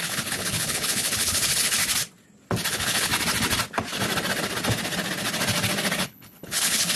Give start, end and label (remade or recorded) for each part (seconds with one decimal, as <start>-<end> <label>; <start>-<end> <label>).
0.0-1.8 remade; 1.8-2.7 recorded; 2.7-3.1 remade; 3.1-6.0 recorded; 6.0-7.0 remade